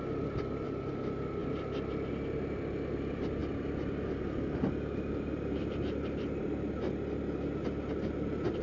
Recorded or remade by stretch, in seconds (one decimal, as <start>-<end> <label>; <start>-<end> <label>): 0.0-8.6 recorded